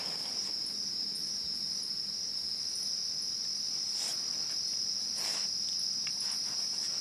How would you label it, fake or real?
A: real